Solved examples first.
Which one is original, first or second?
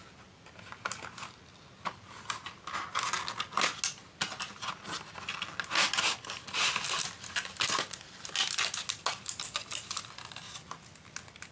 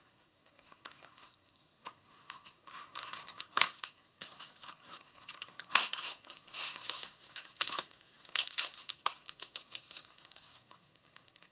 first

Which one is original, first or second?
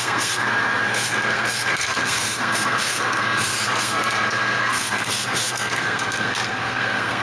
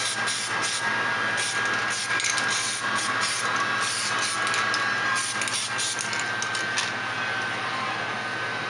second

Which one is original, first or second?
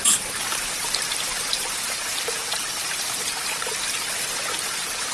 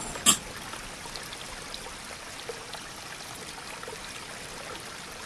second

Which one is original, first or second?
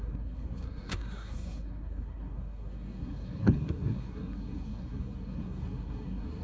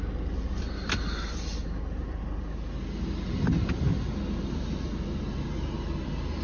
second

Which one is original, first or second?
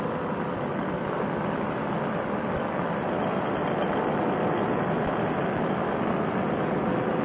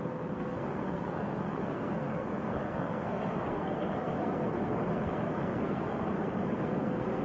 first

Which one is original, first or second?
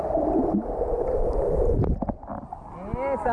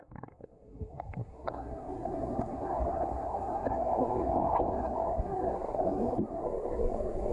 first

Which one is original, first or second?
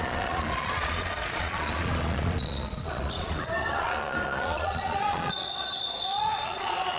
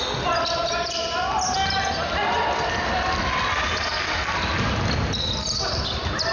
second